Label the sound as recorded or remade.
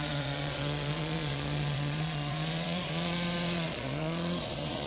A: remade